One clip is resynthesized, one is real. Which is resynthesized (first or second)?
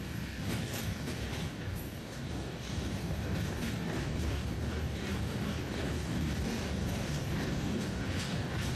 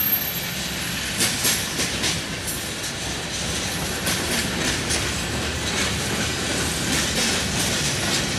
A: first